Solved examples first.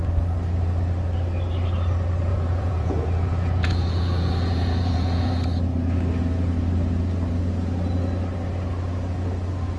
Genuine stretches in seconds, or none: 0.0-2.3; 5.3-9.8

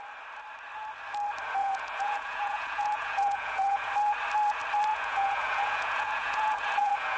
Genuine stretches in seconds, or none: 0.0-1.6; 3.9-4.9

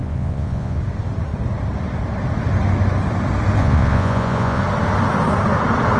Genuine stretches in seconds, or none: 0.8-3.6; 4.6-6.0

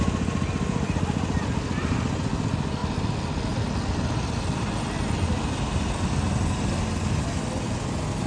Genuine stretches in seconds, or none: 0.0-8.3

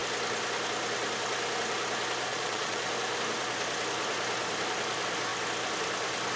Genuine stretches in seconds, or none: 0.0-2.3; 2.9-6.4